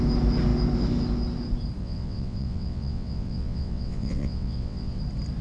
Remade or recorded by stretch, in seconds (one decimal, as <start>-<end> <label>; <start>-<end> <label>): 0.0-1.8 recorded; 1.8-5.0 remade; 5.0-5.4 recorded